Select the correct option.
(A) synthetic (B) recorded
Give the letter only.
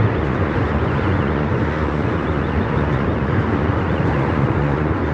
A